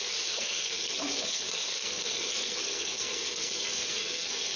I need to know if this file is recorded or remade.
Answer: remade